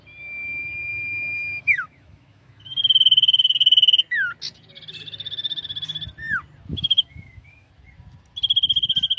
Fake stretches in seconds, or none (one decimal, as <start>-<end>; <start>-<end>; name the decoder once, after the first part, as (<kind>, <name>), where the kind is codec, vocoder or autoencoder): 0.9-2.8 (autoencoder, DAC-VAE); 6.7-7.7